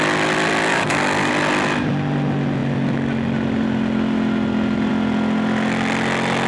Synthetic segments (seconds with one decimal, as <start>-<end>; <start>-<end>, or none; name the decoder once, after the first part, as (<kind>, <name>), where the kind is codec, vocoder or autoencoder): 0.7-1.3 (codec, DAC)